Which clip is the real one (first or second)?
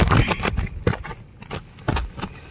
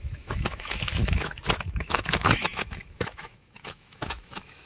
first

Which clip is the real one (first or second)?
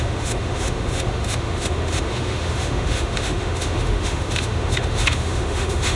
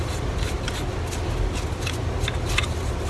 second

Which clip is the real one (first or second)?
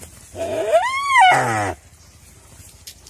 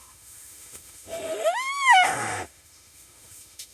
first